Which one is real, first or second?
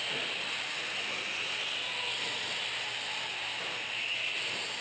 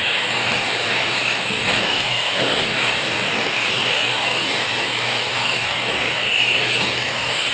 first